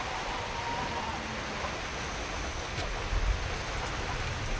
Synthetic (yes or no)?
no